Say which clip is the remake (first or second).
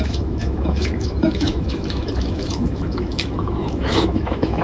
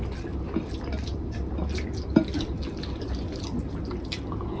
first